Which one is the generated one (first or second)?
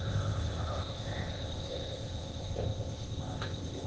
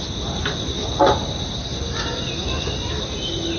first